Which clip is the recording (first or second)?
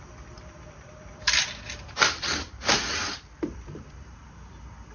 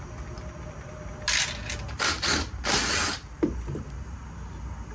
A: second